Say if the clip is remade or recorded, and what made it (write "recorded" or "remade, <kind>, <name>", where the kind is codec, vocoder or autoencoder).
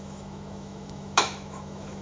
remade, autoencoder, DAC-VAE